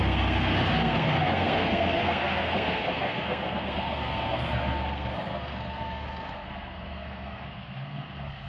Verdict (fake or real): fake